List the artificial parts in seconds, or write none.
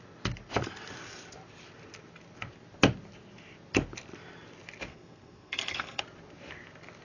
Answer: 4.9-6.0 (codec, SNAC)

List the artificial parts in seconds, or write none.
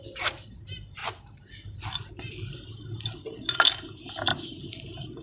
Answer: none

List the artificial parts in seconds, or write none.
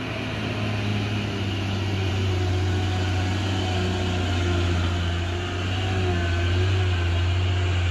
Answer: none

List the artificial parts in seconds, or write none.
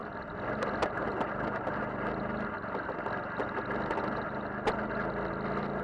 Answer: none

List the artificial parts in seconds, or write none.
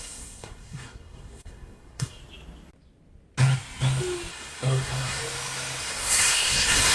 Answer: 0.0-2.2 (codec, SNAC); 4.3-5.2; 5.8-6.9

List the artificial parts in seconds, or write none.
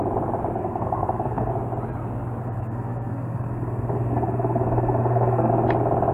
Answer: 0.6-1.5 (codec, SNAC); 2.4-5.5